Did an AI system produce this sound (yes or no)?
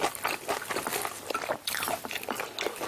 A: no